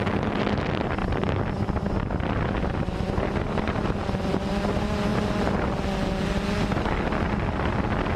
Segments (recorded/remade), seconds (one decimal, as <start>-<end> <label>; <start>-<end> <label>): 0.0-1.0 recorded; 1.0-4.4 remade; 4.4-8.2 recorded